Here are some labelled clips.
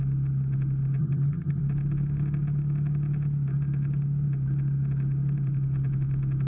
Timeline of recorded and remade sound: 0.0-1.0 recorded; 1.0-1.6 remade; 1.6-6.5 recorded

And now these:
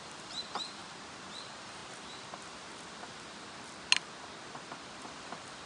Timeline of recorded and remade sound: 0.0-0.8 remade; 0.8-1.4 recorded; 1.4-1.8 remade; 1.8-5.2 recorded; 5.2-5.7 remade

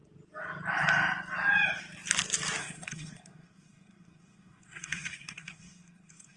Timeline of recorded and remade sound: 0.0-2.6 recorded; 2.6-6.4 remade